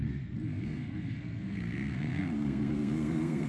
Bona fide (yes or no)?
no